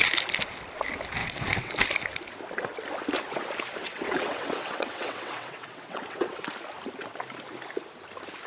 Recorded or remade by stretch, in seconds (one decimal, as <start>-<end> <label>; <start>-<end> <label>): 0.0-1.2 recorded; 1.2-1.7 remade; 1.7-3.8 recorded; 3.8-6.5 remade; 6.5-8.5 recorded